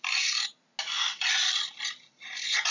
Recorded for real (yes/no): yes